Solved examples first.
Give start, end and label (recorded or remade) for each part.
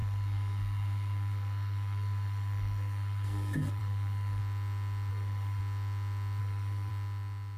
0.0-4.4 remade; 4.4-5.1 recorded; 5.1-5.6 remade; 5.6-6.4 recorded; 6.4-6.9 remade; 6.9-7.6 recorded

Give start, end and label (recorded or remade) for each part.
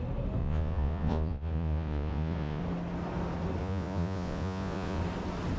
0.0-0.4 recorded; 0.4-2.6 remade; 2.6-3.6 recorded; 3.6-5.0 remade; 5.0-5.6 recorded